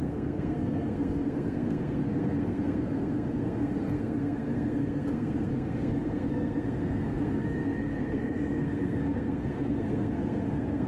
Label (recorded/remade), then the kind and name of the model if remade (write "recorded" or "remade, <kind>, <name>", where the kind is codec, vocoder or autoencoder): remade, codec, SNAC